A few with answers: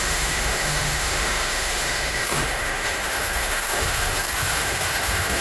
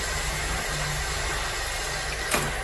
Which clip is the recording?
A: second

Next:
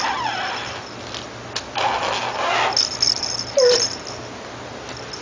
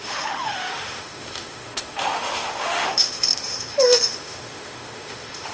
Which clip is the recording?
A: first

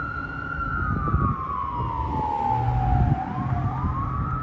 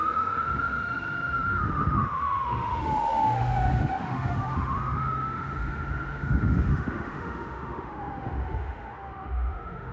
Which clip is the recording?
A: first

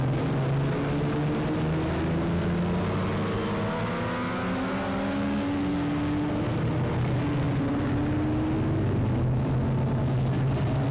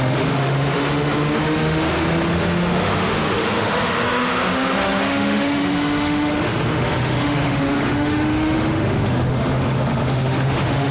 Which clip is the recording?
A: first